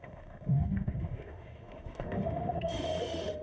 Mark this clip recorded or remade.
remade